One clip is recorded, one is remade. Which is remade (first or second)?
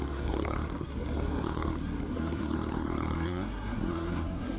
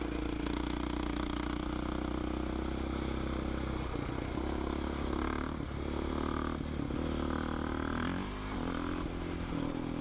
first